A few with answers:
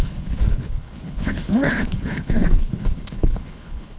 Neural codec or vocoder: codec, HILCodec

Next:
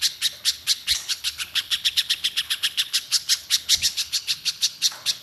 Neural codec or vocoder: codec, HILCodec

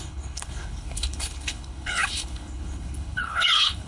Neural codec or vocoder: codec, HILCodec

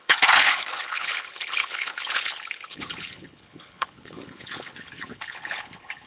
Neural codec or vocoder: codec, HILCodec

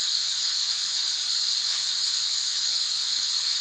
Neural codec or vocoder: codec, HILCodec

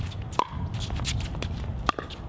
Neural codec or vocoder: none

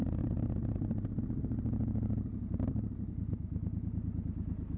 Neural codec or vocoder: none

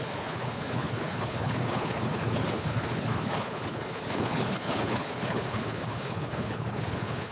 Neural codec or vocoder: codec, HILCodec